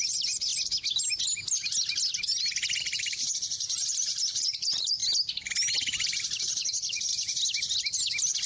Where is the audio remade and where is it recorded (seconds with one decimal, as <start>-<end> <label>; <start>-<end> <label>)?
0.0-0.5 remade; 0.5-2.8 recorded; 2.8-5.0 remade; 5.0-6.4 recorded; 6.4-7.1 remade; 7.1-8.5 recorded

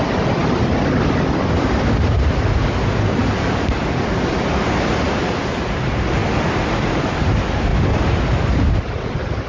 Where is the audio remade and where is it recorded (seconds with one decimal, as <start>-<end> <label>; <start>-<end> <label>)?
0.0-0.4 recorded; 0.4-5.2 remade; 5.2-6.2 recorded; 6.2-6.9 remade; 6.9-7.7 recorded; 7.7-9.5 remade

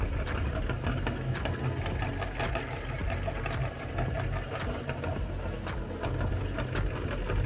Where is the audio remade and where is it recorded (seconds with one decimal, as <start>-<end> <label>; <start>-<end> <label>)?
0.0-3.0 recorded; 3.0-3.9 remade; 3.9-7.5 recorded

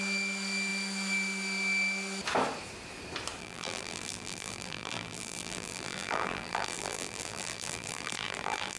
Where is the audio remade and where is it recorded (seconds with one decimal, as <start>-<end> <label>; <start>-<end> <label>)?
0.0-3.4 recorded; 3.4-8.8 remade

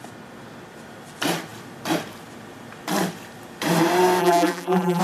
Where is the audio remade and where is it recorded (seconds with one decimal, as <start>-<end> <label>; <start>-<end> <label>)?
0.0-4.2 recorded; 4.2-5.0 remade